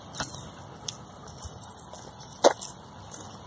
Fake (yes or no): no